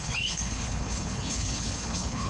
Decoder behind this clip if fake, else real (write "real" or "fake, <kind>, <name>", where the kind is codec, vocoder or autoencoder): fake, codec, HILCodec